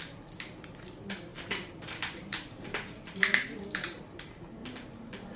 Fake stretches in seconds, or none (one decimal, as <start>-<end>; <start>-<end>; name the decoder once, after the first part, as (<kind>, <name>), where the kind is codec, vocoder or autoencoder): 1.3-4.0 (vocoder, BigVGAN v2)